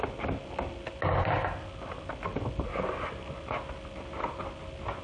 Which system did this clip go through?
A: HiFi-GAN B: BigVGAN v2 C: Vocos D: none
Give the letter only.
D